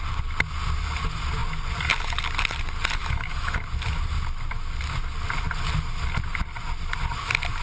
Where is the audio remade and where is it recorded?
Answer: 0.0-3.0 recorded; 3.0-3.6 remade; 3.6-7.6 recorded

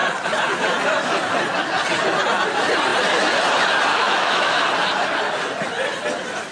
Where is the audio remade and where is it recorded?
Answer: 0.0-3.9 recorded; 3.9-4.6 remade; 4.6-6.5 recorded